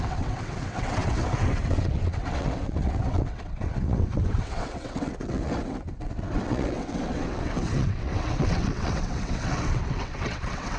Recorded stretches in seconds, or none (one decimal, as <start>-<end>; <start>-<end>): none